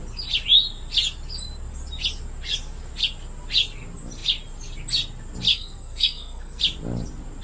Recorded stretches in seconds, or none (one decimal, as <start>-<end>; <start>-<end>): 0.0-5.5; 6.6-7.4

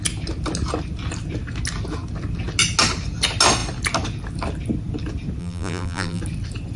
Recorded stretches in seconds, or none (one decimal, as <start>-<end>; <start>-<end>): 0.0-5.4; 6.2-6.8

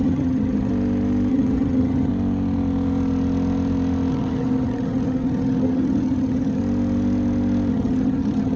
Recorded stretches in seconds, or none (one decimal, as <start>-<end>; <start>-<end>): 0.7-1.3; 2.1-4.1; 6.6-7.7

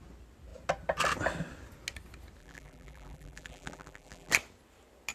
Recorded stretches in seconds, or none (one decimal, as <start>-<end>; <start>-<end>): 0.0-2.4; 4.3-5.1

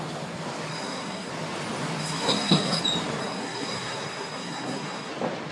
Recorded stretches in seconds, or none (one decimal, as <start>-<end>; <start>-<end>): 0.0-0.7; 1.3-2.0; 2.8-3.2; 5.1-5.5

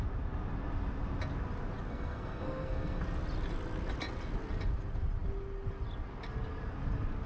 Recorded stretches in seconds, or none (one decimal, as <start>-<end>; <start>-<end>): 0.0-1.9; 3.0-7.3